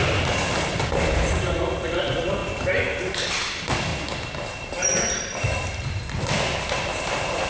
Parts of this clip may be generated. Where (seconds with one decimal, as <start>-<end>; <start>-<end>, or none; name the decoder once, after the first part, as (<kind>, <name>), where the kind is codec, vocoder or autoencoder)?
0.8-2.4 (vocoder, BigVGAN v2); 3.3-7.5